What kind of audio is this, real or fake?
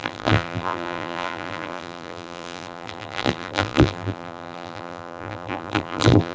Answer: fake